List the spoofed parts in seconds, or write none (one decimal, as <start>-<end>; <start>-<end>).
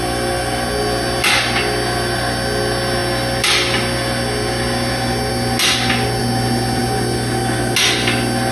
none